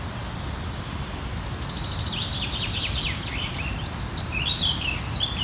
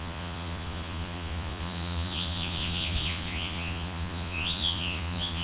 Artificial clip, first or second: second